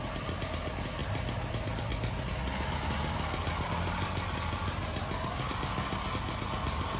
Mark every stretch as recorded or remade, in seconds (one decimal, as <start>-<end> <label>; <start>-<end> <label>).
0.0-7.0 recorded